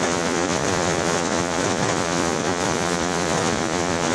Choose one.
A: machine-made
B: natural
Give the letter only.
A